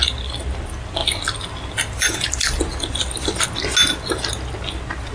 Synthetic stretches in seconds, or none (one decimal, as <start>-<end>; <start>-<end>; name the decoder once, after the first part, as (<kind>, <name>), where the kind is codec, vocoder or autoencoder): 1.0-3.4 (vocoder, BigVGAN v2)